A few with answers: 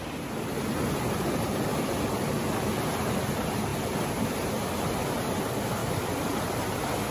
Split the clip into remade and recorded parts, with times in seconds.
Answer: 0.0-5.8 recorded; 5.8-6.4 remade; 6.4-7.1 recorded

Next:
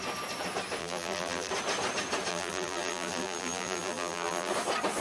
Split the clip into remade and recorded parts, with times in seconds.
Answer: 0.0-0.8 recorded; 0.8-1.5 remade; 1.5-2.3 recorded; 2.3-4.5 remade; 4.5-5.0 recorded

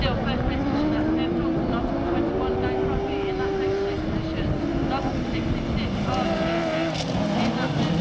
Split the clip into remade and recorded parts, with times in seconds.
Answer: 0.0-8.0 recorded

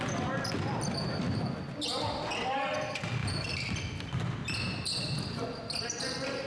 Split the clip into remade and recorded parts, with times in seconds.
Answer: 0.0-3.2 recorded; 3.2-3.8 remade; 3.8-6.5 recorded